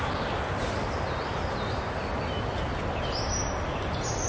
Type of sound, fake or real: real